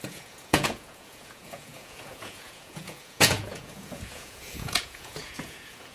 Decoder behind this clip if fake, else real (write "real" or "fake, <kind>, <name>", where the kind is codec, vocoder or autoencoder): fake, vocoder, Vocos